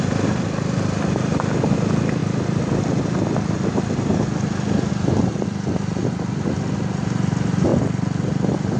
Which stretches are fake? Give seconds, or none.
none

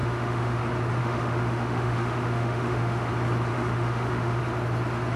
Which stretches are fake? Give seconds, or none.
0.0-0.6 (autoencoder, DAC-VAE); 1.0-3.1; 3.5-4.4

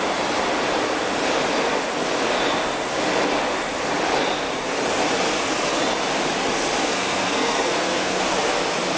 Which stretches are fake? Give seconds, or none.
6.8-8.2 (codec, SNAC)

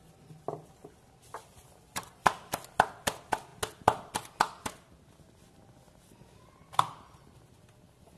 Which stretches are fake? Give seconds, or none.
none